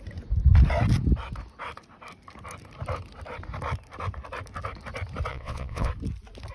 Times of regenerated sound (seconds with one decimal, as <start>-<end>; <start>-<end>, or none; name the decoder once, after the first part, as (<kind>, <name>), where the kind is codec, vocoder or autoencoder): 5.3-5.9 (vocoder, WaveNeXt)